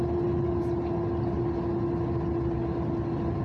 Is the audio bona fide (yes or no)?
yes